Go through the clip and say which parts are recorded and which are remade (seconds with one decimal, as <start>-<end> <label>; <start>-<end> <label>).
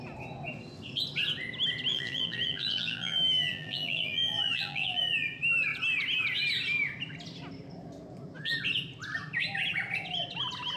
0.0-1.9 recorded; 1.9-5.0 remade; 5.0-10.8 recorded